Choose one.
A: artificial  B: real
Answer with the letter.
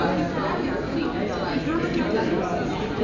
B